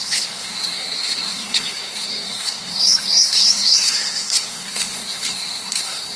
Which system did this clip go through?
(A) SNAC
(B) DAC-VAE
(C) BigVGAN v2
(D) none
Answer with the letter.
A